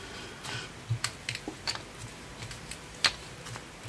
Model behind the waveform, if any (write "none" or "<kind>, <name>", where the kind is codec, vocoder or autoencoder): none